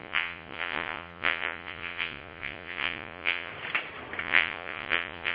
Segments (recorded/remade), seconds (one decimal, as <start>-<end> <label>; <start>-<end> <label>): 0.0-3.5 remade; 3.5-4.2 recorded; 4.2-5.3 remade